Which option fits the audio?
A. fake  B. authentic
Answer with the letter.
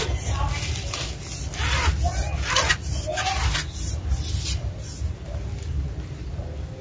B